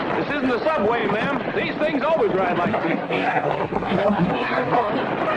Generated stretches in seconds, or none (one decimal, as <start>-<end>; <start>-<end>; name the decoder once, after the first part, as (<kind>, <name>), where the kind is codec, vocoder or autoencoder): 2.7-4.9 (codec, SNAC)